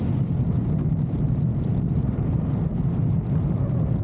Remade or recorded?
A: recorded